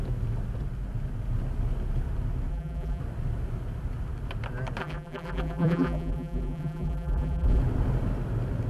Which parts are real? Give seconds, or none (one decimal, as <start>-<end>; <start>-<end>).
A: 0.0-2.5; 3.0-4.8; 7.6-8.7